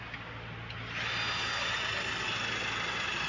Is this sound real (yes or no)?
yes